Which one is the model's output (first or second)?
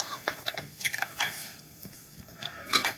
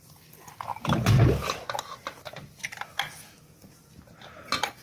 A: first